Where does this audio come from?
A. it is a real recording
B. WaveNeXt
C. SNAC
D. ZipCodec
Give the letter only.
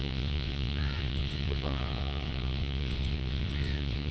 B